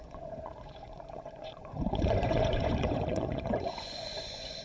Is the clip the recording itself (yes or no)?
no